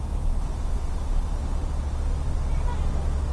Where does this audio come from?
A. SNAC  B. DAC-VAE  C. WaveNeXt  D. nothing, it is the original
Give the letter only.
D